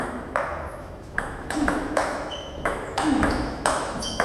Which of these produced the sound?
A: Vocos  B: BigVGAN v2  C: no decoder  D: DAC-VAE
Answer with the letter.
D